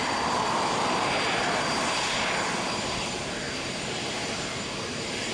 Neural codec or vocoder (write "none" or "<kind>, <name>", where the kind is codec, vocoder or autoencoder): vocoder, BigVGAN v2